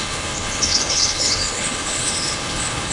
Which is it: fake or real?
fake